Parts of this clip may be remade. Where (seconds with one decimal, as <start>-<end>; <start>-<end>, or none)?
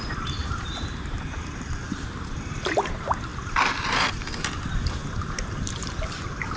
0.4-2.4